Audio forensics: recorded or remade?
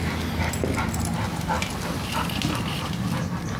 recorded